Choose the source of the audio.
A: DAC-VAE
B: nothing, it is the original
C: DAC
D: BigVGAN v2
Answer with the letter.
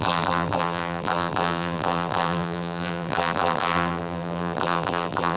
D